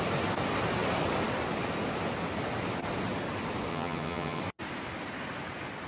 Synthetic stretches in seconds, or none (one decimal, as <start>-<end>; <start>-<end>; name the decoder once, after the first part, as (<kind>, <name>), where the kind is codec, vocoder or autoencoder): 3.7-4.4 (vocoder, HiFi-GAN)

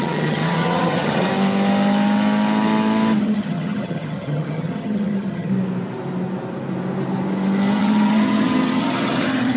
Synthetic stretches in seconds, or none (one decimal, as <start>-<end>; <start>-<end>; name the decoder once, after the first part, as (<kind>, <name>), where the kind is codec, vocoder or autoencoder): 0.0-1.3 (vocoder, HiFi-GAN); 3.2-5.5; 7.8-9.6

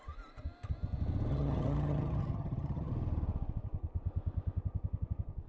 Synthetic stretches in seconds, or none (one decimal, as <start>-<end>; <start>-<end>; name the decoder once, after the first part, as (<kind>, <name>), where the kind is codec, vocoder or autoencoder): 1.3-2.9 (vocoder, HiFi-GAN)

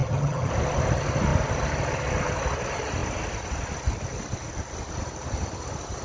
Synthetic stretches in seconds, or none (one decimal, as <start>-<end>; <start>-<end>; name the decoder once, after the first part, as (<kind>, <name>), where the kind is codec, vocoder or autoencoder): 0.0-0.5 (vocoder, HiFi-GAN)

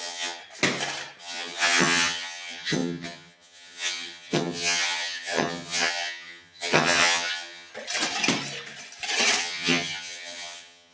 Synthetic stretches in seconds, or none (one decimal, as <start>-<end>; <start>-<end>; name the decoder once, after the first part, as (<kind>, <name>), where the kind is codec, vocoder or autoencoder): 0.0-0.4 (vocoder, HiFi-GAN); 1.2-7.7; 9.4-10.9

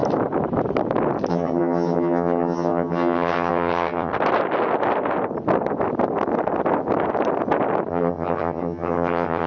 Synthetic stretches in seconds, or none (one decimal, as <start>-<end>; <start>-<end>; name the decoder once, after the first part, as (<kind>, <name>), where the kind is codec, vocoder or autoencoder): 1.3-4.1 (vocoder, HiFi-GAN); 7.9-9.5